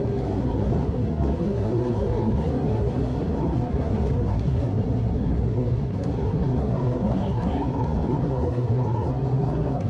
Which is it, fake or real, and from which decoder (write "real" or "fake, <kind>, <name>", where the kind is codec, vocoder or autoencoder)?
fake, codec, SNAC